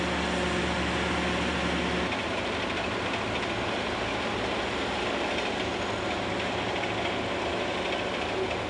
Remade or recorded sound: recorded